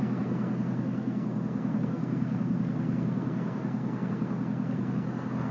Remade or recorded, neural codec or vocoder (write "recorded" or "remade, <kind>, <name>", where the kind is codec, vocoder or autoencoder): remade, codec, SNAC